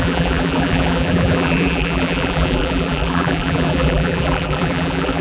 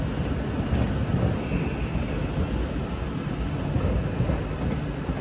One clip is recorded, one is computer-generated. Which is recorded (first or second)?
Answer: second